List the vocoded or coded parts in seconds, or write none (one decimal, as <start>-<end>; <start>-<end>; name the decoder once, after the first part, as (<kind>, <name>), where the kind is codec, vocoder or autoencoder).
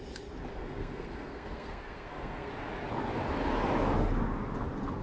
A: 0.5-2.5 (codec, SNAC)